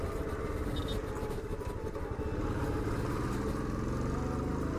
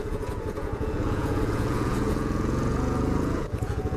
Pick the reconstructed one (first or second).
second